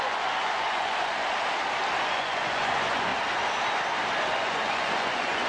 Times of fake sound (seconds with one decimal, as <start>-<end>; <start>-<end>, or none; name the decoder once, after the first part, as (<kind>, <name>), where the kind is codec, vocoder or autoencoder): 0.0-1.2 (vocoder, Vocos); 2.0-3.1; 4.3-5.5

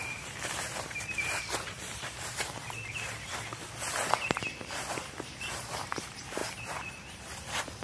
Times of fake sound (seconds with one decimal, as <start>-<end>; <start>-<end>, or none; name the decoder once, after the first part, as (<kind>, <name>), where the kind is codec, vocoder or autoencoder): 0.0-2.6 (vocoder, BigVGAN v2); 4.5-7.8

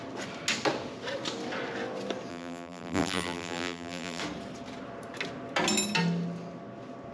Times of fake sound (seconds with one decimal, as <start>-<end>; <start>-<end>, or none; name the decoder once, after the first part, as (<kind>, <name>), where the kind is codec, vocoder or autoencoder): 2.3-4.2 (vocoder, BigVGAN v2)

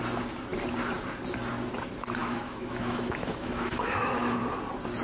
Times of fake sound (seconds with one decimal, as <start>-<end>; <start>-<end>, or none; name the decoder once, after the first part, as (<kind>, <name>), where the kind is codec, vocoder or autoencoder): 2.2-4.4 (autoencoder, DAC-VAE)

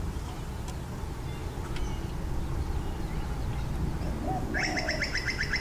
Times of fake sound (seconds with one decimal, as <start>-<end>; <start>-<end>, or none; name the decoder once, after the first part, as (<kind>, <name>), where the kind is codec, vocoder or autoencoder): none

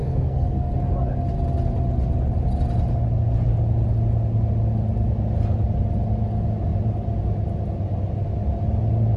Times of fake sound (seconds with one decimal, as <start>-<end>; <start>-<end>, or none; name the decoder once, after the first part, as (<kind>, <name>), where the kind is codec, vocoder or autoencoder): 0.0-0.7 (codec, SNAC)

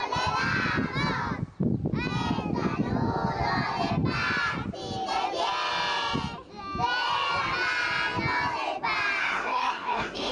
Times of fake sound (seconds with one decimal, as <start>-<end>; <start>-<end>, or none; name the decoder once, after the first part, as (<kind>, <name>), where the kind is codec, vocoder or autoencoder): 9.2-10.3 (codec, SNAC)

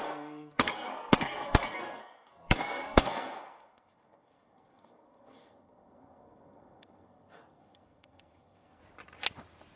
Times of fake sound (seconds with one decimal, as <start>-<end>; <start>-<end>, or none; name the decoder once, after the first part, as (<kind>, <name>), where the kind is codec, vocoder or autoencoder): 0.0-8.8 (codec, SNAC)